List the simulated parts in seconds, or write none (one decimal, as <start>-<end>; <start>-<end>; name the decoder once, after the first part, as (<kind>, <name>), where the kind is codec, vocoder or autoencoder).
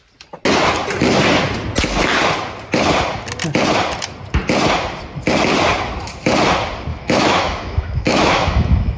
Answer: 6.9-9.0 (autoencoder, DAC-VAE)